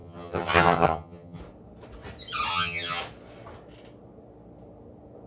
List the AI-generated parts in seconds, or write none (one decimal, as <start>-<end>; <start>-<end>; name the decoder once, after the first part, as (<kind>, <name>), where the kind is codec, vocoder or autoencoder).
0.0-1.4 (vocoder, HiFi-GAN); 2.5-3.0